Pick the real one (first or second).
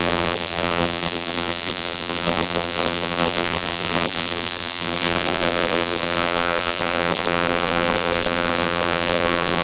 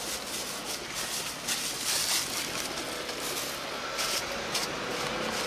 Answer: second